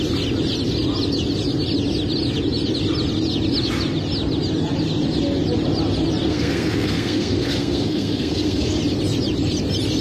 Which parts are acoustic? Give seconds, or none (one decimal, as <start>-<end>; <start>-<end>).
0.0-6.3; 8.8-10.0